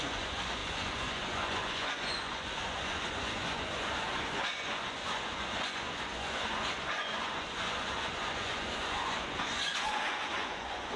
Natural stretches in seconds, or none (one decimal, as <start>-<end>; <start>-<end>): none